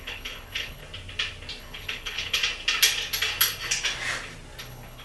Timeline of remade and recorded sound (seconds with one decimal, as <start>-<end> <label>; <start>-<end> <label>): 0.0-0.8 remade; 0.8-1.6 recorded; 1.6-2.4 remade; 2.4-4.6 recorded; 4.6-5.0 remade